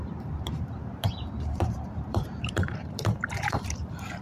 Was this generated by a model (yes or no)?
yes